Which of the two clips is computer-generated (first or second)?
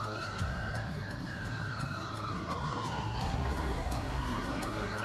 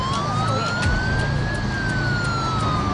first